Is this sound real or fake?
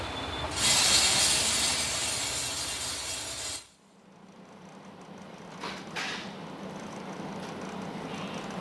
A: real